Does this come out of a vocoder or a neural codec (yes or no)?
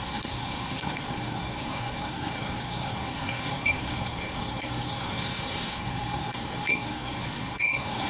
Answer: yes